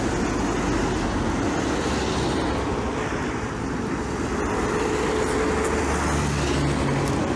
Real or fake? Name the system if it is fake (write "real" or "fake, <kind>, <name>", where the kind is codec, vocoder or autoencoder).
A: real